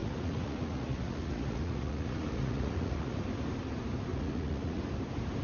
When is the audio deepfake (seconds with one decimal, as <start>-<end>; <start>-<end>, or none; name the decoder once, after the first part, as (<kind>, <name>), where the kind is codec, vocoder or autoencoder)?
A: 0.0-3.2 (vocoder, Vocos); 4.1-4.8